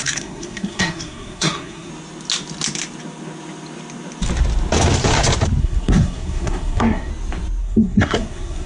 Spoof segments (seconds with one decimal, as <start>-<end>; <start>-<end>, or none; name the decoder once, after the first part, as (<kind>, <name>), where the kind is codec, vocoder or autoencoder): 0.0-1.9 (codec, SNAC); 5.6-7.1; 7.6-8.7